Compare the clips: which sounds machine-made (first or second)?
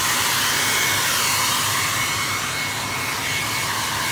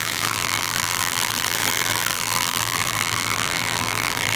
second